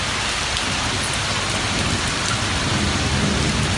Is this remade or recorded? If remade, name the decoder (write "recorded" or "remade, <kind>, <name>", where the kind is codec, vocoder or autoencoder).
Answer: recorded